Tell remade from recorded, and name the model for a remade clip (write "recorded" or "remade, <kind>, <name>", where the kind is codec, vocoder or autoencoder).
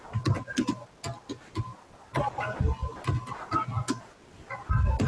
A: recorded